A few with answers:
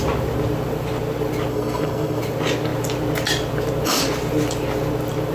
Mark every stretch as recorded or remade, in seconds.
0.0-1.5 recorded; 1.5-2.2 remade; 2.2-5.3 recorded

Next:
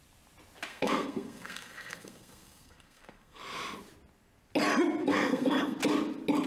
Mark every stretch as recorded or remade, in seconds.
0.0-0.7 recorded; 0.7-3.4 remade; 3.4-5.0 recorded; 5.0-5.8 remade; 5.8-6.5 recorded

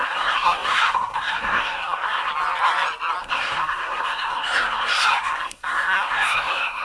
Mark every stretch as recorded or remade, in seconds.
0.0-2.3 remade; 2.3-3.2 recorded; 3.2-6.8 remade